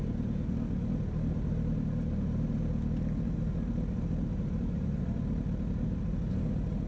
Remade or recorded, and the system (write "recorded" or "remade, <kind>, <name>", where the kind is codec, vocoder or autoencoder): recorded